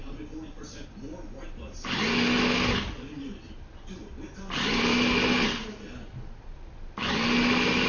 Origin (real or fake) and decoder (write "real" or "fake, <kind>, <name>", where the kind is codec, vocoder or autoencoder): real